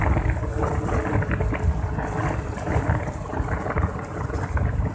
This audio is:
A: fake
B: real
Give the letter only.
B